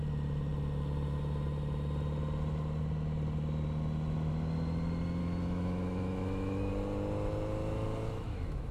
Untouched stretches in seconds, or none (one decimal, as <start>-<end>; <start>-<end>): 0.0-5.2; 6.7-8.0